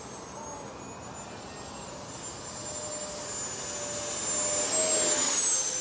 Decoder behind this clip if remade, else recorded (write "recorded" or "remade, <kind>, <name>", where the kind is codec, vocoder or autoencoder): recorded